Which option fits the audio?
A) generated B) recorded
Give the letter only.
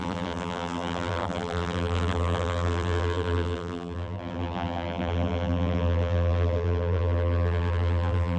A